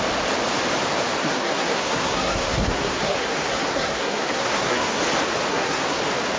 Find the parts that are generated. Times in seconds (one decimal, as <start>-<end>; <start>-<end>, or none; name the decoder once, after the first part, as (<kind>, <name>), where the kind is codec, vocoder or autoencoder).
1.2-5.0 (codec, SNAC); 5.5-6.0